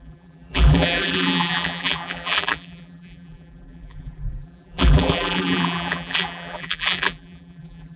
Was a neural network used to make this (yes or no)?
yes